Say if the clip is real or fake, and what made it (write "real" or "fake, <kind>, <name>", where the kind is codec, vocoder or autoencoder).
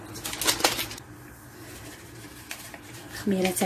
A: real